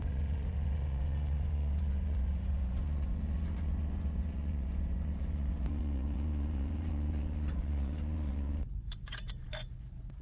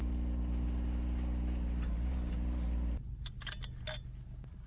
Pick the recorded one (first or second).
second